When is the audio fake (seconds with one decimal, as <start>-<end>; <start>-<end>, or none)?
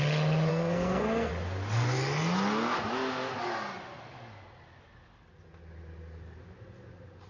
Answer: 0.5-1.3